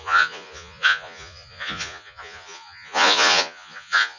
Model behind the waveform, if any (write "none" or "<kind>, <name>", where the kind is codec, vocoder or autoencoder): vocoder, Vocos